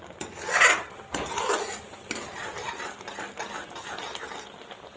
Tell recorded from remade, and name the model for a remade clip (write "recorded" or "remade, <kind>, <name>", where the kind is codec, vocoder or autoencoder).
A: recorded